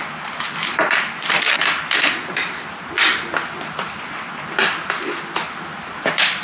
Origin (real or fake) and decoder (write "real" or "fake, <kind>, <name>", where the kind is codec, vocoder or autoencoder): real